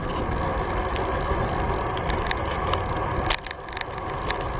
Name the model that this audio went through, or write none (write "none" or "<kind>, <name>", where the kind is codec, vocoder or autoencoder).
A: none